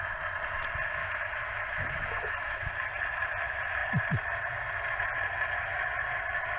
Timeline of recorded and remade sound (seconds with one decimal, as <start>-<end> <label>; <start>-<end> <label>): 0.0-1.0 recorded; 1.0-2.7 remade; 2.7-6.6 recorded